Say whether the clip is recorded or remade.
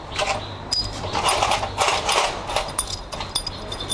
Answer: recorded